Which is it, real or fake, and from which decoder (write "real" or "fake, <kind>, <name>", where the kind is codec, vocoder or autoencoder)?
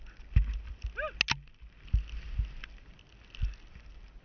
real